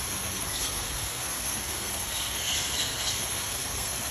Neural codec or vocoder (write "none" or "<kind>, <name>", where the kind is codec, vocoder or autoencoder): codec, SNAC